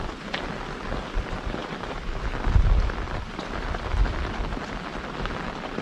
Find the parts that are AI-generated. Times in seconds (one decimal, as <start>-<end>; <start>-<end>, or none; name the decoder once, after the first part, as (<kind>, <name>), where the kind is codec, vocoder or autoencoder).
1.6-4.1 (vocoder, BigVGAN v2)